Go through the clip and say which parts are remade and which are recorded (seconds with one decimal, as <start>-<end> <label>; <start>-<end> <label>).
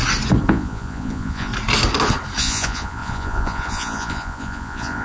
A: 0.0-0.5 recorded; 0.5-1.5 remade; 1.5-2.4 recorded; 2.4-5.0 remade